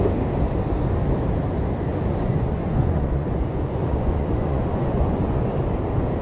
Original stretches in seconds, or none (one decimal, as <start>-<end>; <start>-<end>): 0.0-1.9; 5.5-6.2

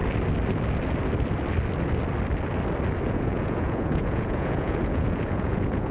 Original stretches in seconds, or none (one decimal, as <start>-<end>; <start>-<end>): 0.0-3.1

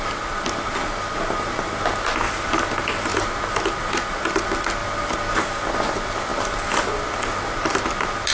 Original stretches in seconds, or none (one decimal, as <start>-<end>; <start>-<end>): 0.0-8.3

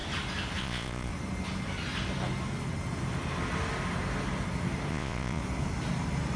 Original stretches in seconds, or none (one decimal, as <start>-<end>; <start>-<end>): 0.0-0.6; 1.1-4.9; 5.4-6.4

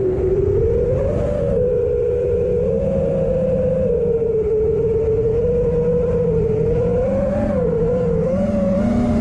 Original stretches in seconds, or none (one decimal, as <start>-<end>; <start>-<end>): 0.0-9.2